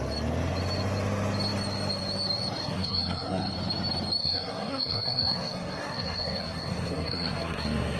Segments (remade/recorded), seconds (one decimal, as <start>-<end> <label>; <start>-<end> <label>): 0.0-2.6 recorded; 2.6-3.5 remade; 3.5-4.2 recorded; 4.2-8.0 remade